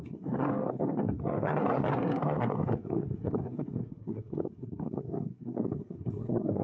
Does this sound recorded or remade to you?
remade